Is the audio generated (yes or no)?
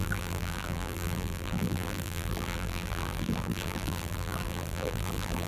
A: yes